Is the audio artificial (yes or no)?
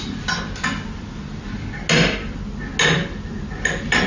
no